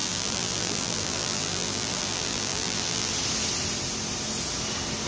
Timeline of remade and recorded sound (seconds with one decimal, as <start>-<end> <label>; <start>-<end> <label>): 0.0-3.1 remade; 3.1-5.1 recorded